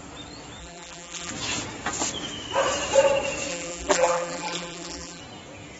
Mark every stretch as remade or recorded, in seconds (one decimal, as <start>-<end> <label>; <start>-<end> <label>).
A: 0.0-0.6 recorded; 0.6-1.3 remade; 1.3-3.5 recorded; 3.5-5.2 remade; 5.2-5.8 recorded